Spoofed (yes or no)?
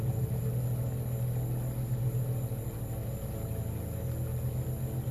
no